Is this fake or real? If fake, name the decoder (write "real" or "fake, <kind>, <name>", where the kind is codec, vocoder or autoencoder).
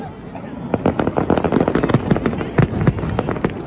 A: real